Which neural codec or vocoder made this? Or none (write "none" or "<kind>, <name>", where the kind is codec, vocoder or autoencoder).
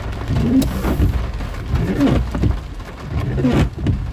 none